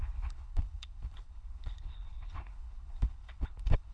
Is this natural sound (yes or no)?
no